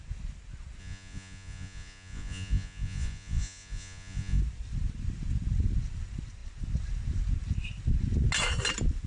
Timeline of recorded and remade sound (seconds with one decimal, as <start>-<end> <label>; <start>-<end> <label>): 0.0-0.8 recorded; 0.8-4.4 remade; 4.4-9.1 recorded